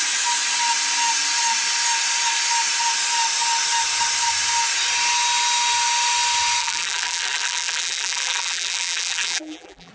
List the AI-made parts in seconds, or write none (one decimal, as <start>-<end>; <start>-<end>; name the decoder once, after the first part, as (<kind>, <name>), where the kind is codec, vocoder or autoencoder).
6.6-9.9 (vocoder, BigVGAN v2)